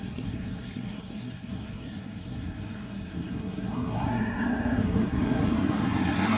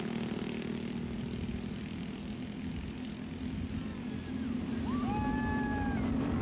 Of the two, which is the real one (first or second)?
second